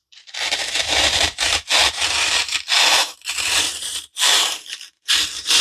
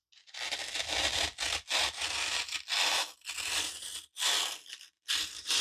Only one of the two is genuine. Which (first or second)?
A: second